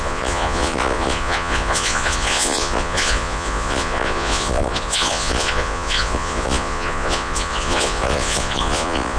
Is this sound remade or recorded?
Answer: remade